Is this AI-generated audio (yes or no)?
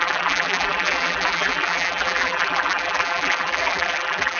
yes